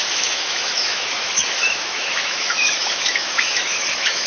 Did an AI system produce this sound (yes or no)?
yes